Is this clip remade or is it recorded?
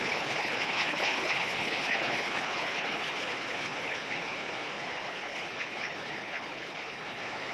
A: remade